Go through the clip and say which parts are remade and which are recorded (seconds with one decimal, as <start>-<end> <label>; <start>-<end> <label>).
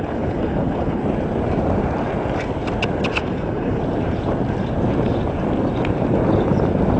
0.0-1.0 remade; 1.0-3.1 recorded; 3.1-3.8 remade; 3.8-7.0 recorded